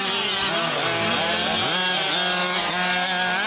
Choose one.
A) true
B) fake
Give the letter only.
A